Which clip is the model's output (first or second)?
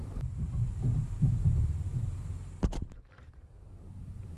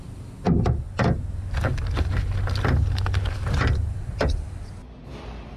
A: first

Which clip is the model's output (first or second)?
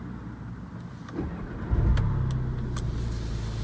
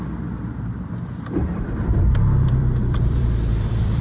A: second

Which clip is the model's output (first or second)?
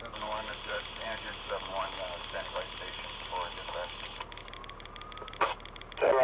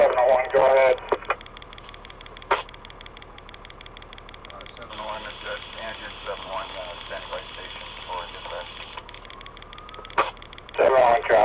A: second